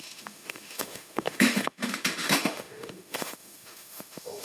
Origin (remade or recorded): remade